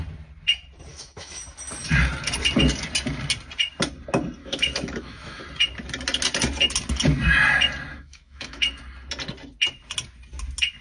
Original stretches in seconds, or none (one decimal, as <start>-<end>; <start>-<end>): 0.0-0.9; 1.4-4.4; 5.4-7.9; 8.8-10.8